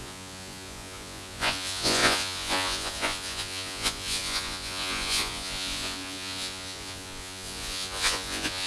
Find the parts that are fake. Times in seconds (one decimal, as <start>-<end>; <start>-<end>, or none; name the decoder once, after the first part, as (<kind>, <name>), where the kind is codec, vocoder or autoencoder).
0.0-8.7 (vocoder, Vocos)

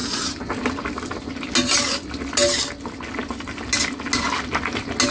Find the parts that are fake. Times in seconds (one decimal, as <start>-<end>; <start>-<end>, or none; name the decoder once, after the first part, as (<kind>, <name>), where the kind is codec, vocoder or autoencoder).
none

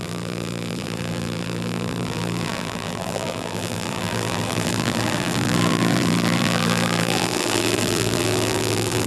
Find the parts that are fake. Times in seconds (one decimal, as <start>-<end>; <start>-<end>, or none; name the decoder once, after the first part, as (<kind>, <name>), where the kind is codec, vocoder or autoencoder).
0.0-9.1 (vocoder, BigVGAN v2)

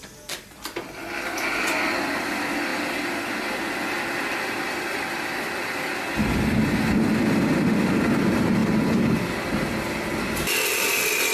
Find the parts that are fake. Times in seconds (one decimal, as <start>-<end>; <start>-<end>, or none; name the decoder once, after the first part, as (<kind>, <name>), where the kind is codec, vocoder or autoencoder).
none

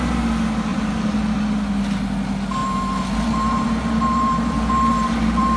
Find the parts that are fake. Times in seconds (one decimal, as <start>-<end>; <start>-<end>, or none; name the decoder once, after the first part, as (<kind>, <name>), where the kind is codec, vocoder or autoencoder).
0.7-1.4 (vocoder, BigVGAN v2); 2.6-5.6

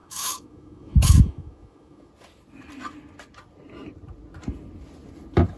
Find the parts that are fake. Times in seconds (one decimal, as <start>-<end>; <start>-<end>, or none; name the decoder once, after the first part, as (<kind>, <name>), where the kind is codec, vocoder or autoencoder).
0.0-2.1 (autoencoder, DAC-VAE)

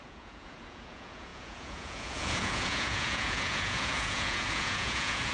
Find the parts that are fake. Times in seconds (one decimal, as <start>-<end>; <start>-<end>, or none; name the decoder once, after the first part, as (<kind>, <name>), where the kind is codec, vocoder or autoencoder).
0.0-5.3 (vocoder, Vocos)

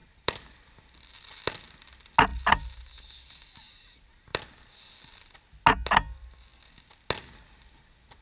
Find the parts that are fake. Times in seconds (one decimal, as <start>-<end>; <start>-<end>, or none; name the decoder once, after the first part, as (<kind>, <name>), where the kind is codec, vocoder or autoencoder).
0.0-1.6 (vocoder, BigVGAN v2); 2.3-3.0; 4.3-5.3